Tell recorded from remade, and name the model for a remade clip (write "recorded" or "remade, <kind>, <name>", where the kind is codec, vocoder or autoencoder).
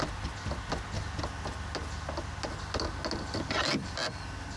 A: recorded